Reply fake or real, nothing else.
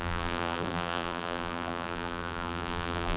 fake